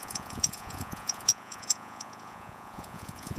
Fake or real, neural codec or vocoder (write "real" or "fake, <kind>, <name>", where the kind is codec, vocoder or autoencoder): fake, vocoder, Vocos